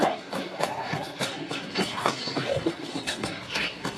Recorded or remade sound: remade